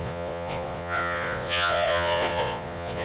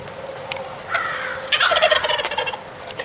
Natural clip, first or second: second